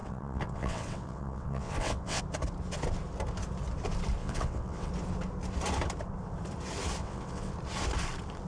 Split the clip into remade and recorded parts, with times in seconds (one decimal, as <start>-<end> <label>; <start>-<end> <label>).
0.0-2.2 remade; 2.2-4.2 recorded; 4.2-4.9 remade; 4.9-7.0 recorded; 7.0-7.5 remade; 7.5-8.5 recorded